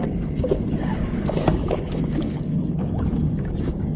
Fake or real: fake